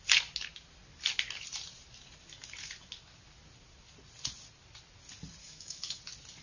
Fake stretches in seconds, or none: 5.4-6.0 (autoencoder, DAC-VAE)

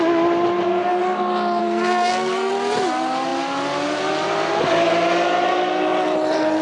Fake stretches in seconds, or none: 1.6-2.5 (codec, SNAC)

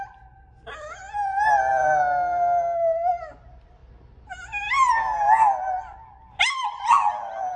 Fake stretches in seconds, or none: none

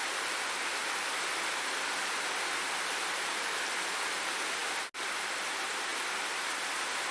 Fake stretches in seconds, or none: none

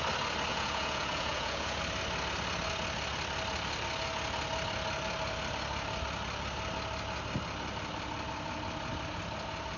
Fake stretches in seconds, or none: 0.5-1.8 (vocoder, Vocos)

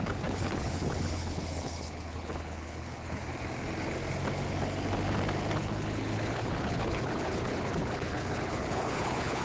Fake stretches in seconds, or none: 0.0-3.3 (codec, HILCodec); 5.6-9.4